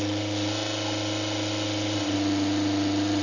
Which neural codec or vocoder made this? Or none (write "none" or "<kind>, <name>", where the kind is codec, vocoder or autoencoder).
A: none